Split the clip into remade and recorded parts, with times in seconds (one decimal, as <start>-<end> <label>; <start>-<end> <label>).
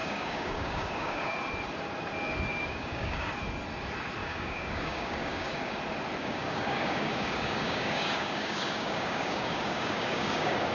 0.0-1.3 remade; 1.3-2.5 recorded; 2.5-3.3 remade; 3.3-4.2 recorded; 4.2-5.8 remade; 5.8-6.2 recorded; 6.2-10.7 remade